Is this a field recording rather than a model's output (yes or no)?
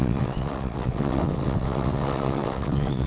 no